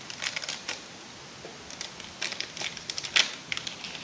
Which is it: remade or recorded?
recorded